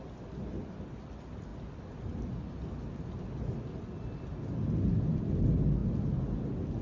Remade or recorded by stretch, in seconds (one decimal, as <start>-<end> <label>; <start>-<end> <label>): 0.0-6.8 recorded